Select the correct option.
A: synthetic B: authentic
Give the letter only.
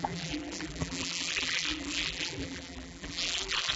A